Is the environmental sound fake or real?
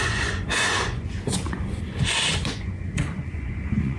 fake